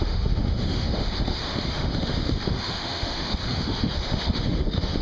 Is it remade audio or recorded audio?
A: remade